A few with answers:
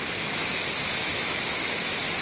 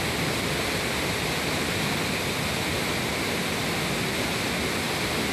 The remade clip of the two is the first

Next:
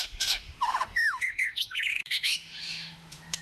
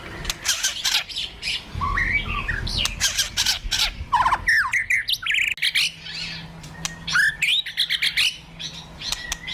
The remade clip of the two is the first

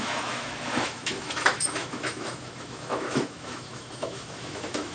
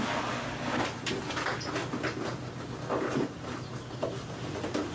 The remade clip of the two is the first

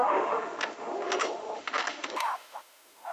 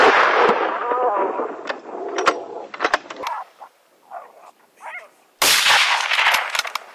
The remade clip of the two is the first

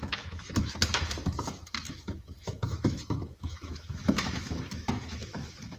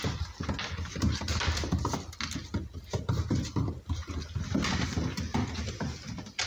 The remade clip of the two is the first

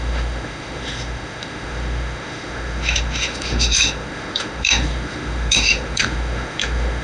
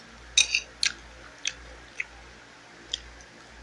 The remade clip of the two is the first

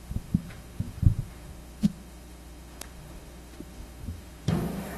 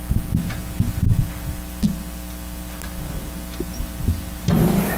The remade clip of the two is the first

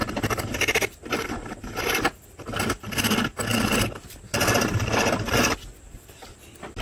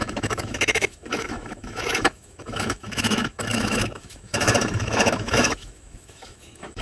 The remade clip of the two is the second